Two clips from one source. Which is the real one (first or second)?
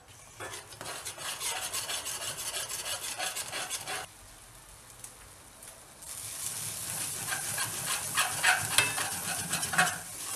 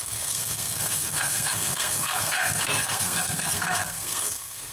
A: first